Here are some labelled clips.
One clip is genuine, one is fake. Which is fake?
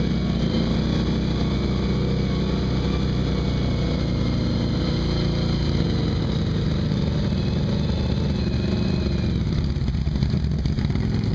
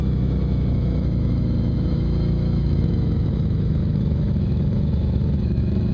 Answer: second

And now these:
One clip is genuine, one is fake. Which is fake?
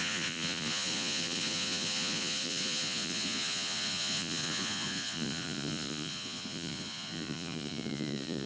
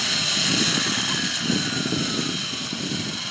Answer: first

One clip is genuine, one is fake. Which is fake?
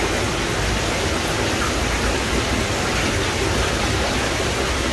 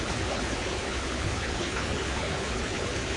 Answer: second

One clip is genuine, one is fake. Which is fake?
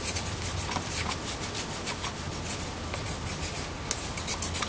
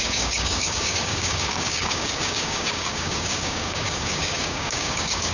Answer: second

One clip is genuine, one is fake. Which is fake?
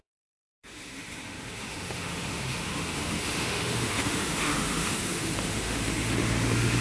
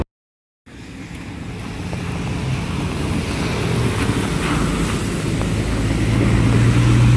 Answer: first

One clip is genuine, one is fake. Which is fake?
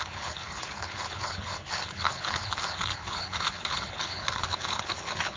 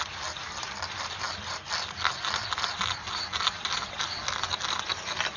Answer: first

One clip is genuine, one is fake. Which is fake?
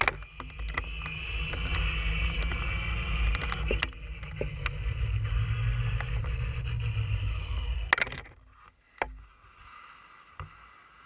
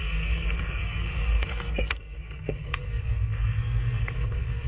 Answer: second